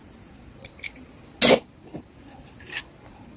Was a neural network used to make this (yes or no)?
no